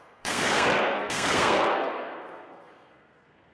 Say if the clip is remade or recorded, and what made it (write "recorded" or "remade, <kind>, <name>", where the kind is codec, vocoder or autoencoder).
remade, codec, SNAC